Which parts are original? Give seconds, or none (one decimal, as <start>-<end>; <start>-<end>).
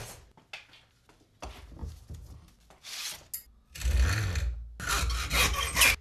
0.0-6.0